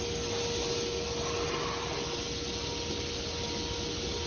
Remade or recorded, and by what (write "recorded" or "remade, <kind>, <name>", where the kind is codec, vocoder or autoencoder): recorded